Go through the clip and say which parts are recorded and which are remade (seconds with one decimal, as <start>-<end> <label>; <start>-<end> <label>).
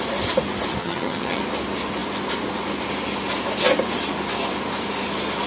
0.0-0.8 recorded; 0.8-1.4 remade; 1.4-5.5 recorded